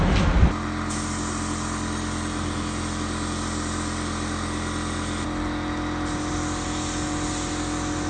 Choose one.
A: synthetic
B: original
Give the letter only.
B